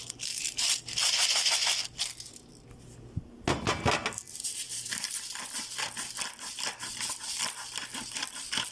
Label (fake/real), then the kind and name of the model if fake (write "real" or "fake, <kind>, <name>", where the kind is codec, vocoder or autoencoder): real